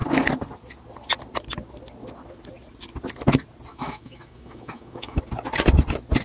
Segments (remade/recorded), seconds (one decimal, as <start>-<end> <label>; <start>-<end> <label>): 0.0-3.7 recorded; 3.7-5.2 remade; 5.2-6.2 recorded